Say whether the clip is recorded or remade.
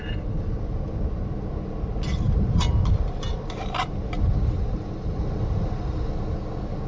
recorded